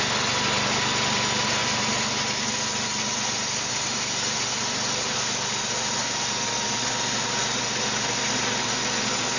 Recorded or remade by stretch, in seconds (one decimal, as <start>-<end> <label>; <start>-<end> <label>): 0.0-9.4 recorded